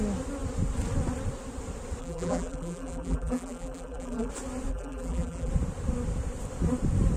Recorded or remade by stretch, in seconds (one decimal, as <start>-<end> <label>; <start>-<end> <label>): 0.0-2.0 recorded; 2.0-4.3 remade; 4.3-4.7 recorded; 4.7-5.5 remade; 5.5-7.2 recorded